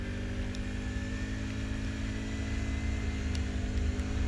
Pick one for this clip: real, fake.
real